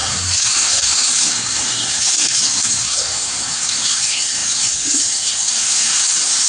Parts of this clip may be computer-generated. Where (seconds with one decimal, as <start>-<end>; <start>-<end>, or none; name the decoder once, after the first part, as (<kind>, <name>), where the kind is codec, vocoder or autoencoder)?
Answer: 0.0-6.5 (codec, SNAC)